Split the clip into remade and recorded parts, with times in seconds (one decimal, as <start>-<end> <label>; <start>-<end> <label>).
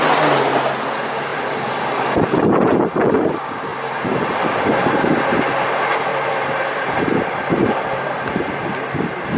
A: 0.0-1.3 recorded; 1.3-2.2 remade; 2.2-3.7 recorded; 3.7-5.2 remade; 5.2-6.1 recorded; 6.1-9.4 remade